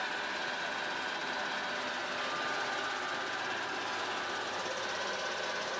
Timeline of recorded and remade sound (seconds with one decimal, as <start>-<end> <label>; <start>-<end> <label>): 0.0-5.8 recorded